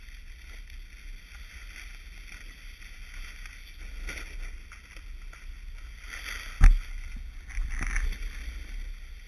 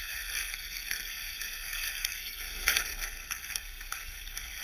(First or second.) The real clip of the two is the first